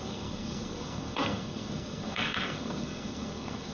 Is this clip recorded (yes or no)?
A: no